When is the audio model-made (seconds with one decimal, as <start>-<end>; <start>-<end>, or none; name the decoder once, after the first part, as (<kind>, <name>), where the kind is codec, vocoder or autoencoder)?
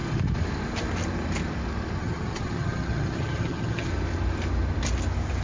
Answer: 2.0-3.9 (vocoder, HiFi-GAN)